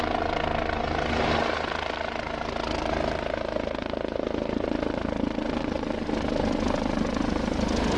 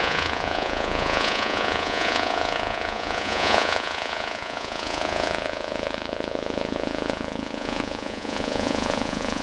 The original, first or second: first